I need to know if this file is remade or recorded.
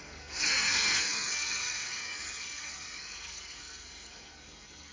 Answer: remade